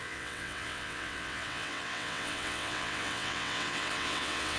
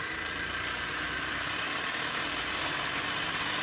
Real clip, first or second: second